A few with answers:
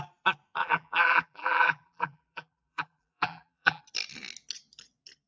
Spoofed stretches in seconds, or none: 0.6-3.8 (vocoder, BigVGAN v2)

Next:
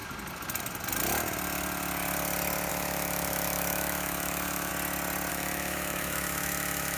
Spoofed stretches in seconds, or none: 2.7-4.7 (autoencoder, DAC-VAE); 5.3-7.0

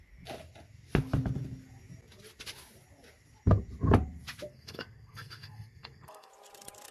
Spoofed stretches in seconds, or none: 4.5-6.3 (codec, SNAC)

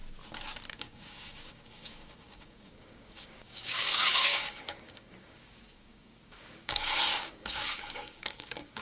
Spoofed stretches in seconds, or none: 0.7-8.8 (codec, DAC)